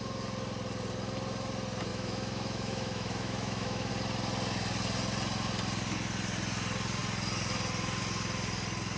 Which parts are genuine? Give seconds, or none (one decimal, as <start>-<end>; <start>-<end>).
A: 0.0-1.9; 3.9-9.0